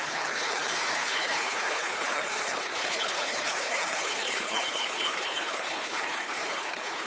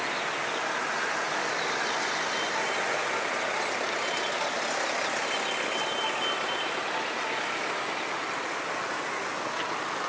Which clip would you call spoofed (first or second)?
first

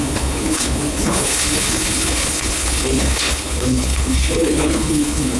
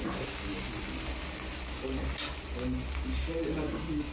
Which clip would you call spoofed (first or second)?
first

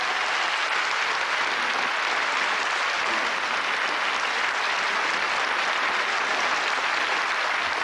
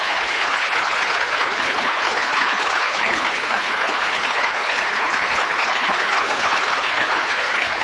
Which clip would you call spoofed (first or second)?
second